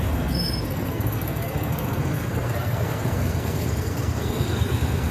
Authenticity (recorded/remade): remade